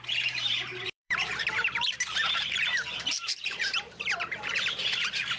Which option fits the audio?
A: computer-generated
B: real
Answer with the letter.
A